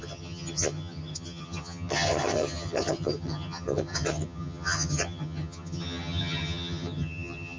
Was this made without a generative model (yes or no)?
no